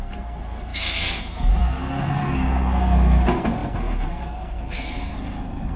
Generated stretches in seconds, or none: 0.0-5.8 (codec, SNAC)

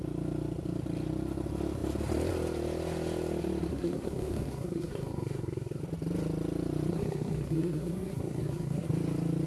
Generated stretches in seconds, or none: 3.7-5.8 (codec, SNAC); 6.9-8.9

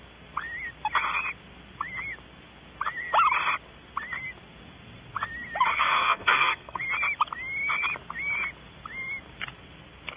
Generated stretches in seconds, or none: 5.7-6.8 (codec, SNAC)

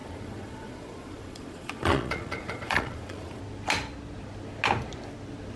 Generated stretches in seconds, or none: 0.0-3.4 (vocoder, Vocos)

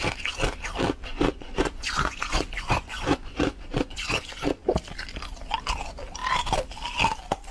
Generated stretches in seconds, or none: 1.1-4.5 (vocoder, Vocos)